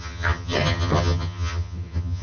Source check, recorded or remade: remade